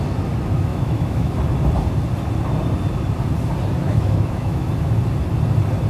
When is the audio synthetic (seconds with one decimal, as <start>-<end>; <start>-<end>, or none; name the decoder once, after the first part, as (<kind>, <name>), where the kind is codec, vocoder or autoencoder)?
0.7-1.3 (autoencoder, DAC-VAE); 3.8-4.7